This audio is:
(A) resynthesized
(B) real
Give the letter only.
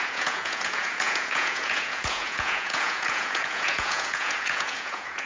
A